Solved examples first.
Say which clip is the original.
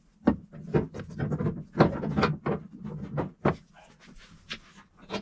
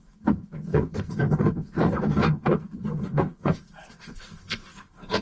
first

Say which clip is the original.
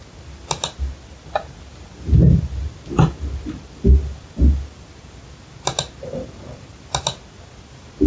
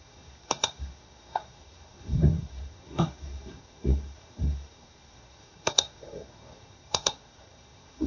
first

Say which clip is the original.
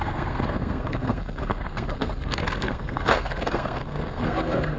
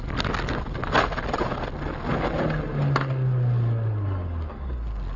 second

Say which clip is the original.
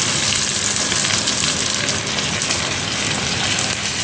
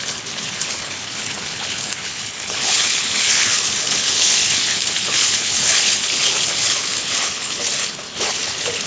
first